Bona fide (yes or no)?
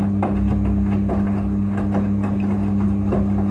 yes